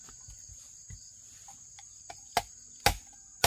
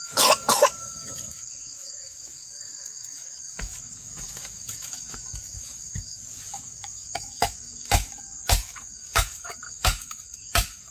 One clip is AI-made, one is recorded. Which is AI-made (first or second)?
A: second